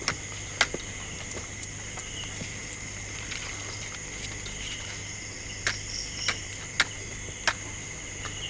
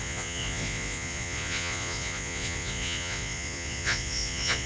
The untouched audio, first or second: first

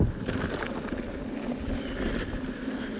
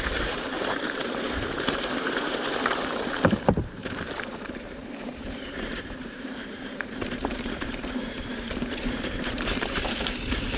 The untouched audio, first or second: first